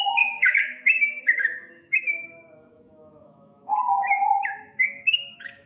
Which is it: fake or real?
fake